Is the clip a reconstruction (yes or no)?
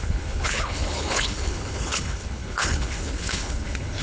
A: yes